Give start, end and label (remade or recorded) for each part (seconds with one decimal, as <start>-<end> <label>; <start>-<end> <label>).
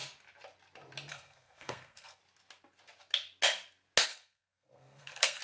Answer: 0.0-1.1 recorded; 1.1-2.2 remade; 2.2-4.1 recorded; 4.1-5.4 remade